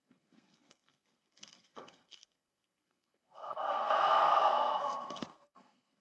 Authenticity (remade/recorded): remade